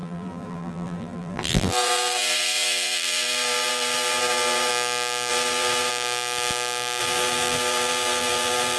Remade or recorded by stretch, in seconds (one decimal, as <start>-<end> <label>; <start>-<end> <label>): 0.0-4.7 remade; 4.7-5.3 recorded; 5.3-5.9 remade; 5.9-7.0 recorded; 7.0-8.8 remade